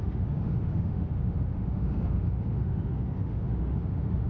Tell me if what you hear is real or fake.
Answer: fake